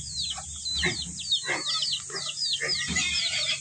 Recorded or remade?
recorded